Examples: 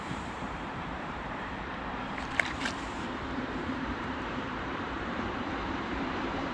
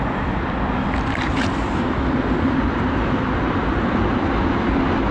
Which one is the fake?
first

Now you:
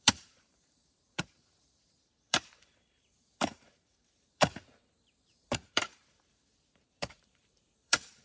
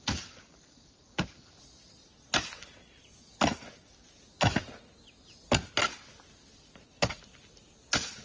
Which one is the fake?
first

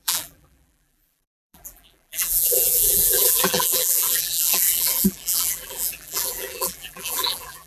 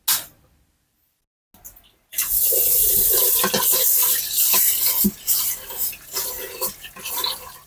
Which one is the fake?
first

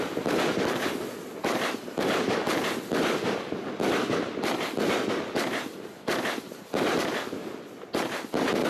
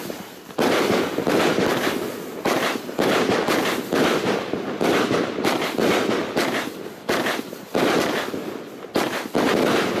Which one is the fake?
second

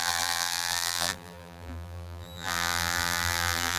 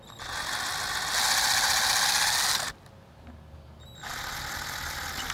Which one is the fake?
first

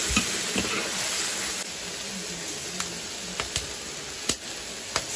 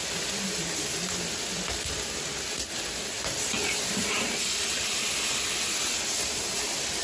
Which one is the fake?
second